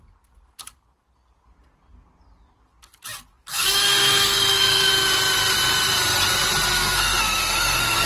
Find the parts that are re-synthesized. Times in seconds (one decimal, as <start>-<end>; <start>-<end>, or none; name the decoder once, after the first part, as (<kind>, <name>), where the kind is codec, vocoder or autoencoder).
3.5-4.9 (codec, SNAC); 6.7-8.1